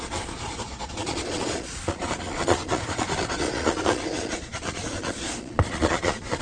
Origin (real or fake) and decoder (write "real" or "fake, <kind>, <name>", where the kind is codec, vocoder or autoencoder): fake, vocoder, Vocos